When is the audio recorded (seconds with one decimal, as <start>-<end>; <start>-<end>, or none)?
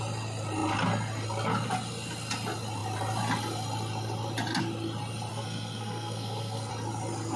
0.0-5.3; 6.7-7.4